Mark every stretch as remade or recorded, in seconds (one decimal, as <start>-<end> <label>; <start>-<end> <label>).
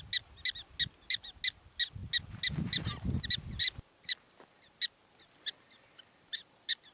0.0-6.9 recorded